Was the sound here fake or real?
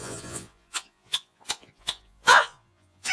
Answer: fake